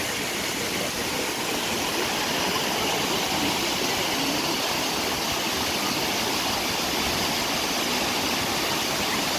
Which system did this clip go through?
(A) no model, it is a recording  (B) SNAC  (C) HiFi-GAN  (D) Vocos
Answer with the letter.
A